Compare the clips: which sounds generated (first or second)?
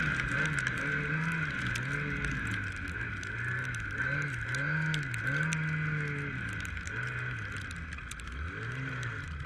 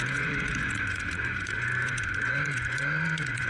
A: second